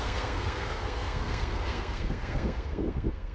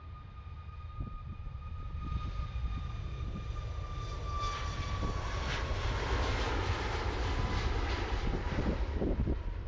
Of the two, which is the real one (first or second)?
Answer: second